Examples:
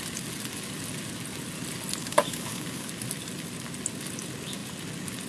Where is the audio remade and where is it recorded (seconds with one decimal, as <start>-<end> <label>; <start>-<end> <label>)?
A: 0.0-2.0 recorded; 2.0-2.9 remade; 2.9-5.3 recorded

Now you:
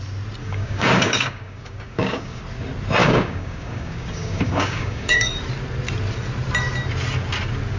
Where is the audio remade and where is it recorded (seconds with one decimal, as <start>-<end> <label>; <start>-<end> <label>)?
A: 0.0-0.4 recorded; 0.4-2.4 remade; 2.4-3.0 recorded; 3.0-5.3 remade; 5.3-7.8 recorded

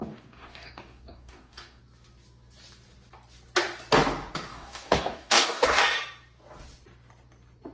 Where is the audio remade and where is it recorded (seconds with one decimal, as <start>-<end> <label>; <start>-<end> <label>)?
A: 0.0-1.8 remade; 1.8-4.5 recorded; 4.5-5.8 remade; 5.8-7.7 recorded

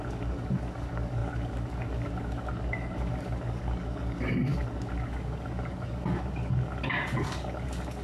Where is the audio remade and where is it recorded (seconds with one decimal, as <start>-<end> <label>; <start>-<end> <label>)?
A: 0.0-8.0 remade